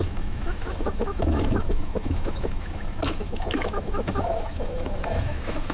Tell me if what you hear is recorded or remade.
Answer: remade